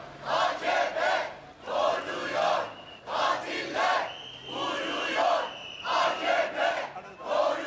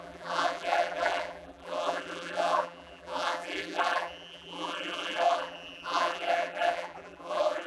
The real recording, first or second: first